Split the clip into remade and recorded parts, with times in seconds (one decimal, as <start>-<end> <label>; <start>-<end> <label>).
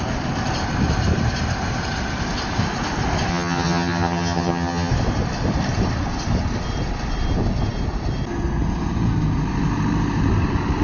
0.0-3.3 recorded; 3.3-4.9 remade; 4.9-10.8 recorded